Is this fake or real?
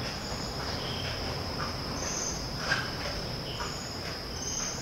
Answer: fake